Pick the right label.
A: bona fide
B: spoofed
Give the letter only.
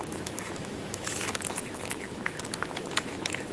B